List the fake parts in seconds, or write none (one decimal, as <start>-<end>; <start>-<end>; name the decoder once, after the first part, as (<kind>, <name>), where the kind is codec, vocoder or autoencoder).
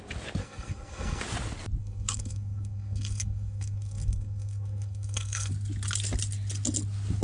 0.4-1.2 (codec, SNAC); 1.8-5.5